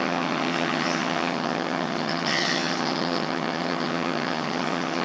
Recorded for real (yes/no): no